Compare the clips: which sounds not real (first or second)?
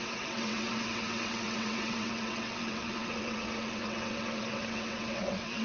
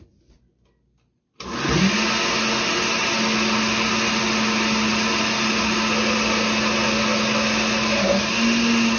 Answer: first